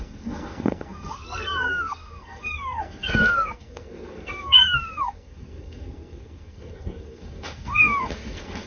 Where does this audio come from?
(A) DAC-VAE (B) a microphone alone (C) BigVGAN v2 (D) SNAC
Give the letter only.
D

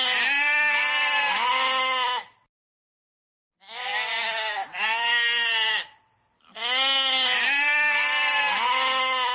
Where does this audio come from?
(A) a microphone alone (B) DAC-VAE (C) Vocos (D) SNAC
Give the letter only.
A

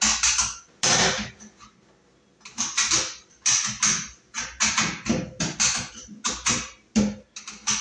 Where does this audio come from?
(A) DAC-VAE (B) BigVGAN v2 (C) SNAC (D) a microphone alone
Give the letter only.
D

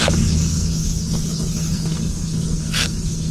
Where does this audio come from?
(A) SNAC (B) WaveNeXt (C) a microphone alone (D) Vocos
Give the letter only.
A